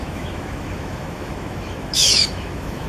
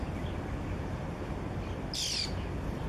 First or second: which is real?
second